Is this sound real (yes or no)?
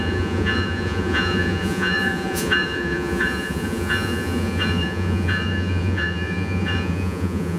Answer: no